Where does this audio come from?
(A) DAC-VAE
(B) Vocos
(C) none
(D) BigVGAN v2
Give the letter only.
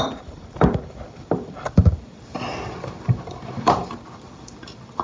D